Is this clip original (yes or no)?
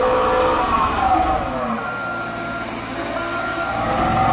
yes